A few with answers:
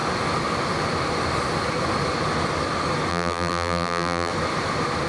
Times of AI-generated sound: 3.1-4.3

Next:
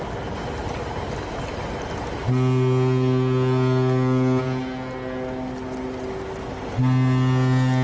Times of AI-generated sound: 0.6-1.4

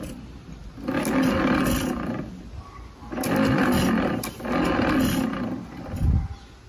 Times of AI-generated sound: none

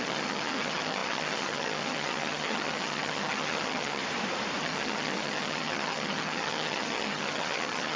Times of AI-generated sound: 0.0-4.0; 4.6-8.0

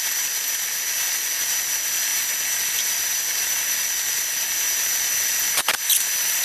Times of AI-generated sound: none

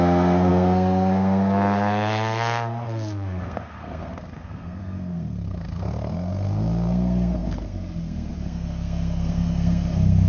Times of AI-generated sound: 0.0-10.3

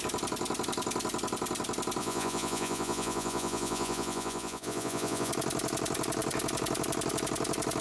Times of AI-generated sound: 2.0-5.3

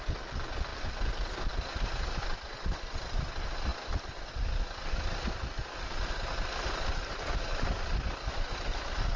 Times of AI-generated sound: none